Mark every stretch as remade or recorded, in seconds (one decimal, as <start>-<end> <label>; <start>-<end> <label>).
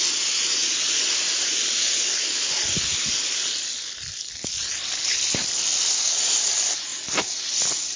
0.0-8.0 recorded